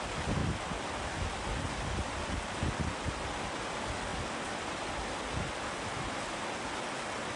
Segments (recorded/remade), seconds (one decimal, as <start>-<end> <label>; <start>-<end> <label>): 0.0-0.4 recorded; 0.4-2.1 remade; 2.1-7.4 recorded

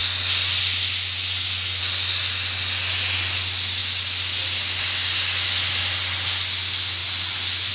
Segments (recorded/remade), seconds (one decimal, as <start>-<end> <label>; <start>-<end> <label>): 0.0-7.7 recorded

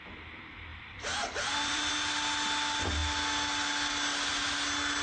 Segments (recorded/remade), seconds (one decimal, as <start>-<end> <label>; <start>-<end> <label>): 0.0-0.7 recorded; 0.7-1.9 remade; 1.9-5.0 recorded

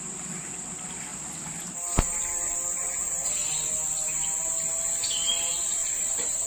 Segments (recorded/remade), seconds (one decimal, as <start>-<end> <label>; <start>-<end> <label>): 0.0-1.1 recorded; 1.1-1.6 remade; 1.6-5.8 recorded; 5.8-6.5 remade

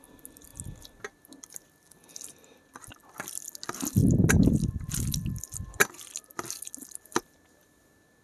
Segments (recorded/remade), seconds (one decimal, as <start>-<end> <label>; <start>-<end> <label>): 0.0-8.2 recorded

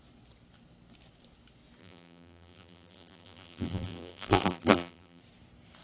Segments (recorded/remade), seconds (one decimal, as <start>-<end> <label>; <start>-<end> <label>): 0.0-1.8 recorded; 1.8-5.2 remade; 5.2-5.8 recorded

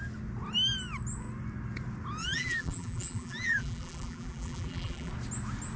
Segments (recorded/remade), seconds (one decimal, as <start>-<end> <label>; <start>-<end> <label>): 0.0-2.2 recorded; 2.2-5.1 remade; 5.1-5.8 recorded